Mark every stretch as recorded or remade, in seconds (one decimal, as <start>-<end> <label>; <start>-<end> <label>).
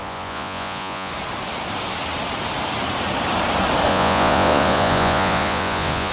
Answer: 0.0-1.1 remade; 1.1-3.9 recorded; 3.9-6.1 remade